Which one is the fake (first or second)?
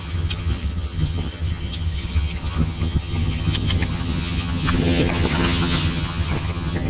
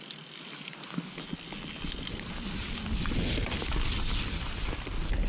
first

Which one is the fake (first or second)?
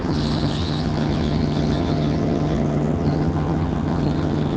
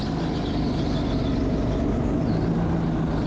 first